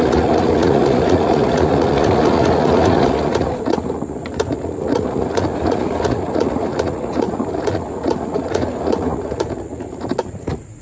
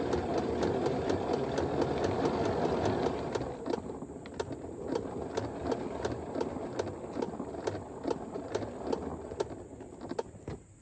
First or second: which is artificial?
first